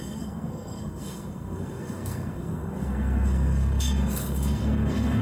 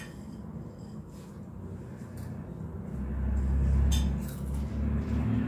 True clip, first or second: second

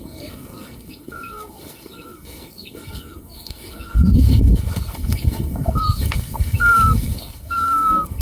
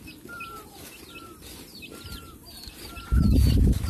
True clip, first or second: second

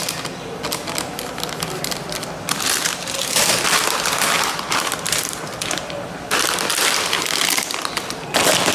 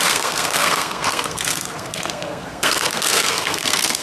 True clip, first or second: first